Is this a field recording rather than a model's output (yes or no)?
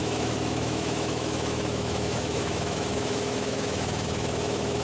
no